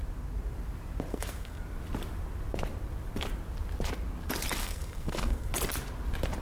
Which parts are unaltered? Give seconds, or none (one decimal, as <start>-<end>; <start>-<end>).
0.0-1.1; 1.6-4.6; 5.5-6.4